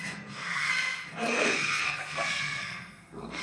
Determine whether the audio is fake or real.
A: fake